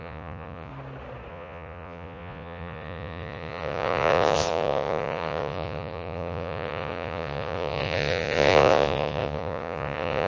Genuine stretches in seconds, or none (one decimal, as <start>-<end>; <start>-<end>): 0.7-1.3